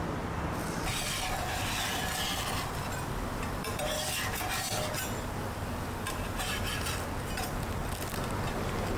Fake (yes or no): no